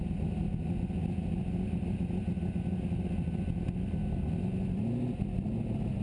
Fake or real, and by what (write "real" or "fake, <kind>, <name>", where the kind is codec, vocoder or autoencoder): real